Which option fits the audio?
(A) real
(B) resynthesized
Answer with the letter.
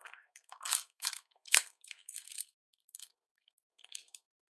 B